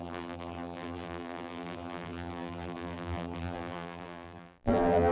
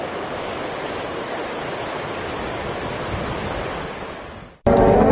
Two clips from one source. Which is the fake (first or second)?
first